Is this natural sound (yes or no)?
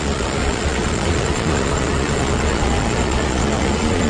no